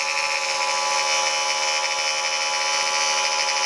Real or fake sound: real